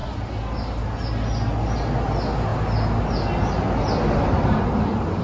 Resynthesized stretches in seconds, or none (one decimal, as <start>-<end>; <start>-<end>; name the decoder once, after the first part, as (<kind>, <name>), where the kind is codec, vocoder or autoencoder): none